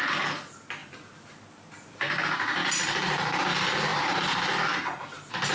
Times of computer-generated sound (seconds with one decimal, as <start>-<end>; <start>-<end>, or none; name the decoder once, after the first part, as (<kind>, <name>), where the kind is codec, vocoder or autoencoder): 0.8-2.2 (vocoder, BigVGAN v2); 2.6-3.5; 3.9-4.7